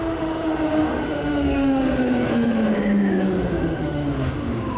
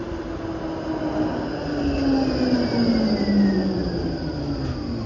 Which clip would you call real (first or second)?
second